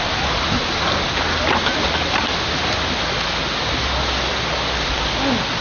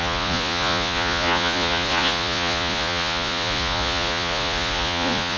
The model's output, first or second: second